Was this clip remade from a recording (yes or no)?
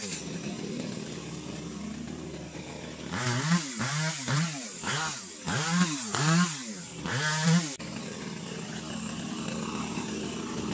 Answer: no